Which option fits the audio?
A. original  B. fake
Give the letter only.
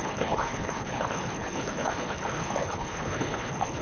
B